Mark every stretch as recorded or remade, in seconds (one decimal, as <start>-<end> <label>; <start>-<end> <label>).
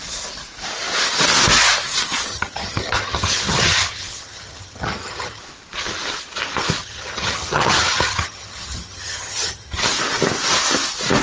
0.0-2.3 recorded; 2.3-5.4 remade; 5.4-6.8 recorded; 6.8-9.8 remade; 9.8-11.2 recorded